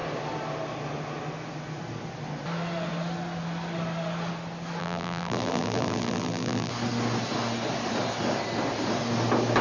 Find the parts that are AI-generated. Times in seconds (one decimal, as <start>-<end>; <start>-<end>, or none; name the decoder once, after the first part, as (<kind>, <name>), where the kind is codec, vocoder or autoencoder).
4.8-6.7 (vocoder, BigVGAN v2)